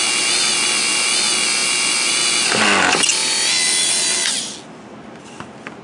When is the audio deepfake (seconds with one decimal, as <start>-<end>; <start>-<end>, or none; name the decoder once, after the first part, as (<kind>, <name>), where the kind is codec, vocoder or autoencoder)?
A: none